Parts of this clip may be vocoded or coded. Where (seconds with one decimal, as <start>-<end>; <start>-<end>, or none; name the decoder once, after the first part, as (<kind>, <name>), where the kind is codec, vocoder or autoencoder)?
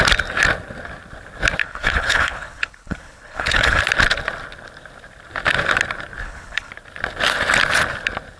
1.6-3.8 (codec, HILCodec); 6.2-6.7